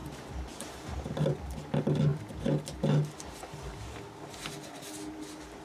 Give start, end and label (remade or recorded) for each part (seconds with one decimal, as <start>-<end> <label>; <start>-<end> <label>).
0.0-5.6 recorded